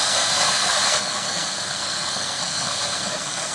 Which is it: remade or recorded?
remade